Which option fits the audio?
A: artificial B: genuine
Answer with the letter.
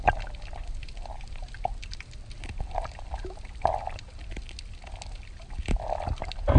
B